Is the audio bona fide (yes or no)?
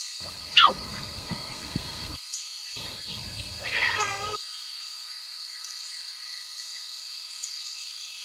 no